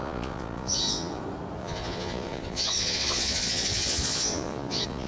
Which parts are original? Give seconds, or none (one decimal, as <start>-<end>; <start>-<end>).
1.2-1.6